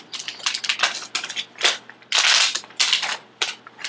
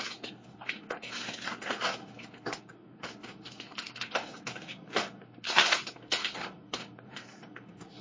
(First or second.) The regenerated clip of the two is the second